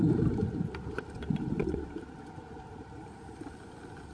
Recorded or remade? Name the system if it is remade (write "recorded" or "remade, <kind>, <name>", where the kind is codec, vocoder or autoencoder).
recorded